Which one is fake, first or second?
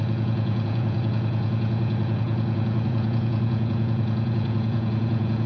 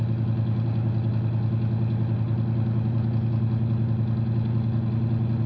first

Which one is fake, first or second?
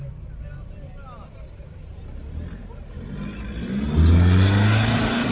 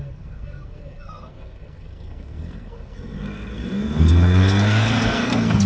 second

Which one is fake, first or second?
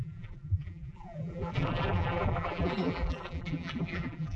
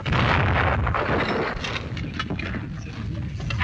first